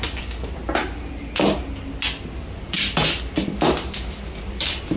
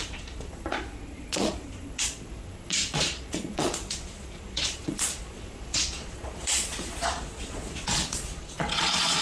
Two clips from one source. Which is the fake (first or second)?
second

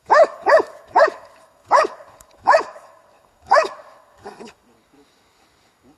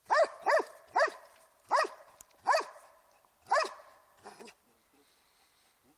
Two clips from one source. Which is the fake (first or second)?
first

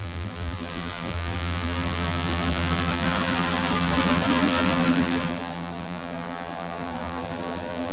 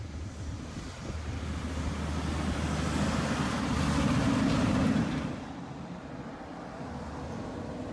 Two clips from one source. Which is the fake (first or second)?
first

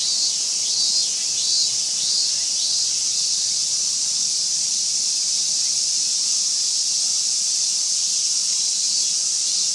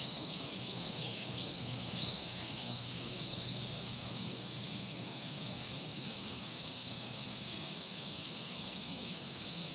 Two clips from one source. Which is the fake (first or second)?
second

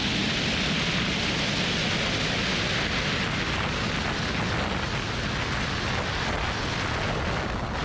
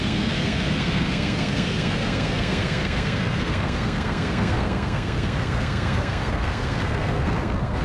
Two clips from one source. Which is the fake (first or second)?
second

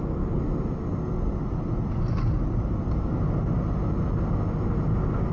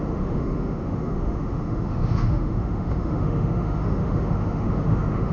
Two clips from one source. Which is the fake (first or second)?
second